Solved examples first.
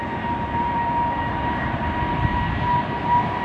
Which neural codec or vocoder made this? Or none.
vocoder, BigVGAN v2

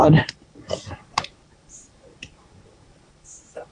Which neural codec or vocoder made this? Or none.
vocoder, BigVGAN v2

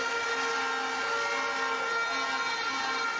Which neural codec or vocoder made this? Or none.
none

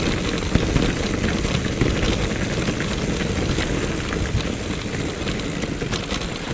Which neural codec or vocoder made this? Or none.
none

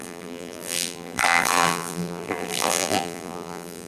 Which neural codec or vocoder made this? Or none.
vocoder, BigVGAN v2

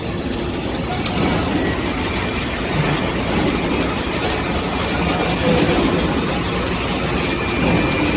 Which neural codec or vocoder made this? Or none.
none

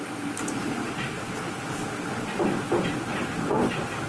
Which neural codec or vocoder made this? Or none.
none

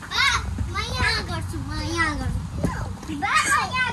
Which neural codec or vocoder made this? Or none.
none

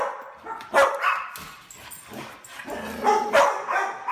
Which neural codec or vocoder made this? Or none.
none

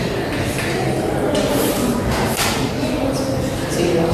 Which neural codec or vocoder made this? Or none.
none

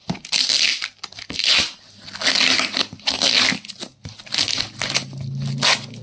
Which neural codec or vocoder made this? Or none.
none